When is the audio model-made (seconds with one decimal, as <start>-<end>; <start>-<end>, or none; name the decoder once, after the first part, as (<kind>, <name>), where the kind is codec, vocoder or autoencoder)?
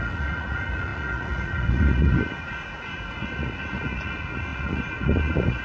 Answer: 0.0-5.6 (vocoder, Vocos)